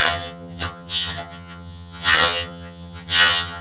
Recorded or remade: remade